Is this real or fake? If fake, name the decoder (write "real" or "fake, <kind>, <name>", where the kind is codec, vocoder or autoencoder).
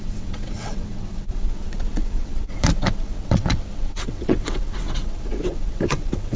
fake, vocoder, WaveNeXt